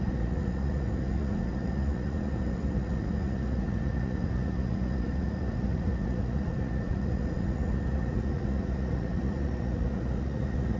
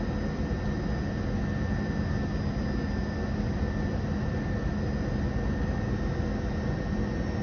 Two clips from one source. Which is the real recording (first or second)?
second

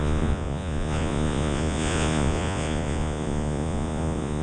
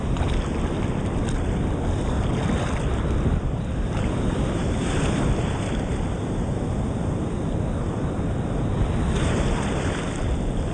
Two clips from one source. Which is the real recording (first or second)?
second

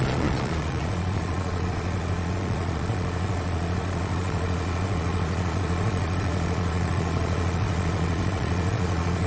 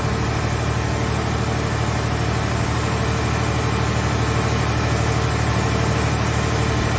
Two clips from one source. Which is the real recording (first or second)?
second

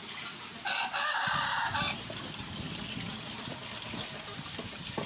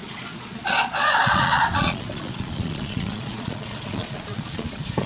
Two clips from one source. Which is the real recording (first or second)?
first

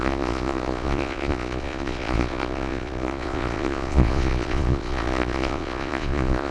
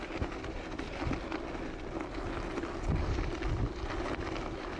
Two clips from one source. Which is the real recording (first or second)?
second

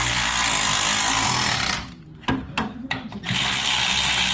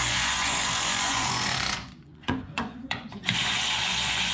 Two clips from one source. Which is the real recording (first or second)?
first